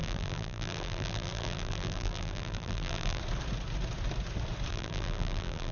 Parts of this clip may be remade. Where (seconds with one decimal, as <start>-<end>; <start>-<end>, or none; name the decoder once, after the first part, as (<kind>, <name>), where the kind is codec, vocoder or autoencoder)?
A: 0.0-3.2 (vocoder, BigVGAN v2); 4.7-5.7

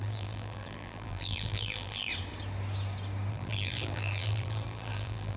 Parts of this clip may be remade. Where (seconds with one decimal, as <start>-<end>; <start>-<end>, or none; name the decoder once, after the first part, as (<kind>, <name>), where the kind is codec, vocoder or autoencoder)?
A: 0.0-2.1 (vocoder, BigVGAN v2); 3.3-5.4

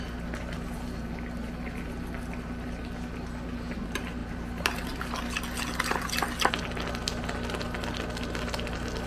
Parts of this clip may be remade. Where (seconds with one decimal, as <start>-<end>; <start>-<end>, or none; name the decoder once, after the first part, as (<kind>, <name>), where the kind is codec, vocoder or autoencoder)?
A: 4.2-5.0 (vocoder, BigVGAN v2)

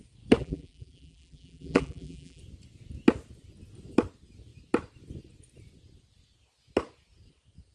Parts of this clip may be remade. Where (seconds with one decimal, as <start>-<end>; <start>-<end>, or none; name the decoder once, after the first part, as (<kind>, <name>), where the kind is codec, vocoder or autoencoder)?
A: 0.4-2.4 (vocoder, BigVGAN v2)

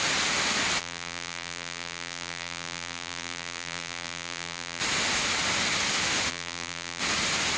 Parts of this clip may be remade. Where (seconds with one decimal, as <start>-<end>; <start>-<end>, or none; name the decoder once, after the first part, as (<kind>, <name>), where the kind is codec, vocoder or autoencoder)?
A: 0.8-4.8 (vocoder, BigVGAN v2); 6.3-7.0

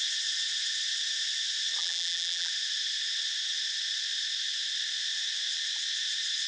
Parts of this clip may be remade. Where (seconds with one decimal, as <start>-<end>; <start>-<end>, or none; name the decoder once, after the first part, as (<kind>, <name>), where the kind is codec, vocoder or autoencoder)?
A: 1.8-2.5 (vocoder, BigVGAN v2)

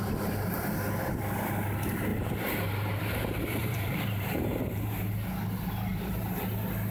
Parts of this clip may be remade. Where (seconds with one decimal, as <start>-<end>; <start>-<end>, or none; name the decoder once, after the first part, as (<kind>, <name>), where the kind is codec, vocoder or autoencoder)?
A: 2.1-5.0 (vocoder, BigVGAN v2); 5.9-6.4